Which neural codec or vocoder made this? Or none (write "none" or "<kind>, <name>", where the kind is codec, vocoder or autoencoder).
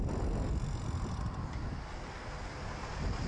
none